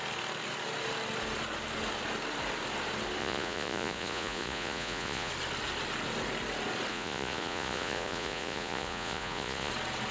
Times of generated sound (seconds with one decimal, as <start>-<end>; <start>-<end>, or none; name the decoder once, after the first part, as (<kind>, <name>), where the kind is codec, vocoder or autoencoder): 3.2-5.3 (vocoder, Vocos); 6.9-9.7